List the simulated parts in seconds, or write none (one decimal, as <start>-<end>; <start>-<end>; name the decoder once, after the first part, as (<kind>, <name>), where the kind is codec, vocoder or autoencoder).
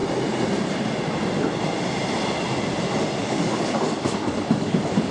3.2-5.1 (codec, DAC)